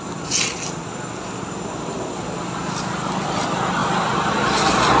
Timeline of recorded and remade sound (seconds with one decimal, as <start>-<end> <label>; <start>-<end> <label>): 0.0-5.0 recorded

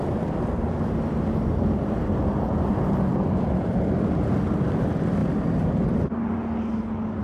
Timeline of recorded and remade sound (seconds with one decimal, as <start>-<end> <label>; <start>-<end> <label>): 0.0-7.2 recorded

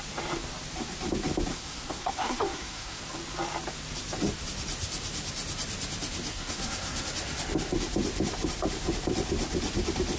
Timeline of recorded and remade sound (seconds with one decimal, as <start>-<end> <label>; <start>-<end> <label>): 0.0-1.5 recorded; 1.5-3.0 remade; 3.0-6.3 recorded; 6.3-7.1 remade; 7.1-10.2 recorded

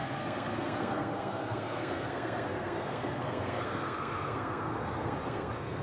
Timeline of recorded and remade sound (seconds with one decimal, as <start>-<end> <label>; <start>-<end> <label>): 0.0-5.8 remade

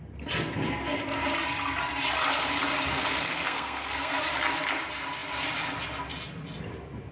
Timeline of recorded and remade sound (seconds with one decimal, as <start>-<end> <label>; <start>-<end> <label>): 0.0-3.0 recorded; 3.0-4.3 remade; 4.3-7.1 recorded